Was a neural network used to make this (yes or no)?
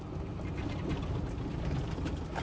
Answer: no